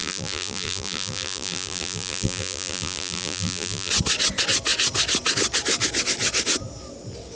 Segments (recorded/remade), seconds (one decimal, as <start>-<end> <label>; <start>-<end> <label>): 0.0-3.9 remade; 3.9-7.3 recorded